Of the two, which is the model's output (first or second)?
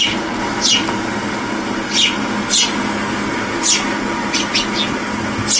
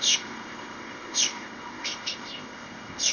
second